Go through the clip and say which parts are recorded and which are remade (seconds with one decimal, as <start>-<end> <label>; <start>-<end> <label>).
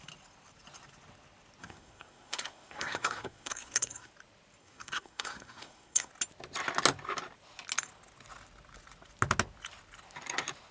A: 0.0-1.6 recorded; 1.6-4.1 remade; 4.1-4.6 recorded; 4.6-6.1 remade; 6.1-10.7 recorded